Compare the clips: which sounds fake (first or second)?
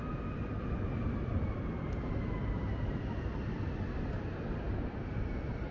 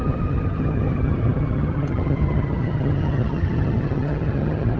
second